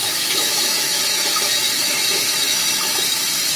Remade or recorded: remade